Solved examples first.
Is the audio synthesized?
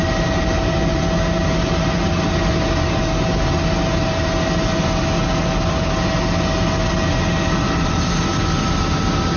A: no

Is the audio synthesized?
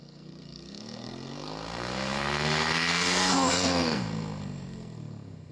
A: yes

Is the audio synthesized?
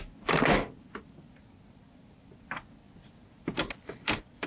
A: no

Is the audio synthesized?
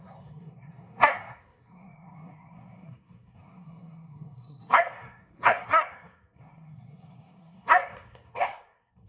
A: yes